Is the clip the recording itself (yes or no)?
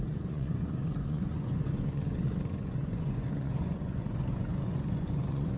no